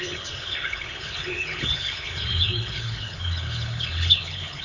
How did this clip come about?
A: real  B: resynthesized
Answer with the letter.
B